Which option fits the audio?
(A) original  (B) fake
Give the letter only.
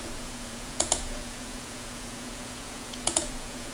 B